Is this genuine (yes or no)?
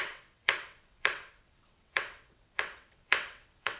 no